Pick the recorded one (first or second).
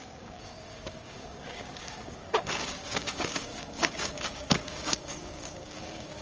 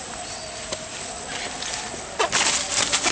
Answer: second